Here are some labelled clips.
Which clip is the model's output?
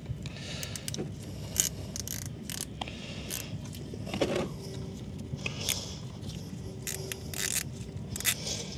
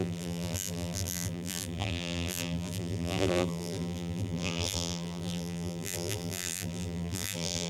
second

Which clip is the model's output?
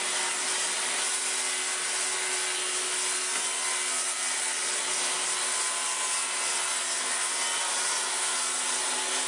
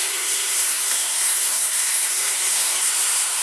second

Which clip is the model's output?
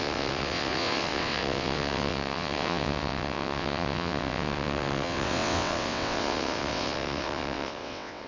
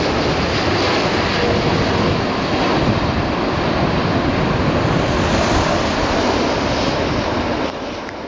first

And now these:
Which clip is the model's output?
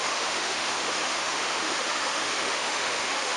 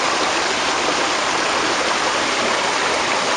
first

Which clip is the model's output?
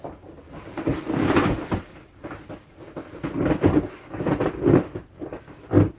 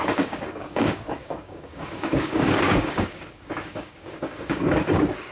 second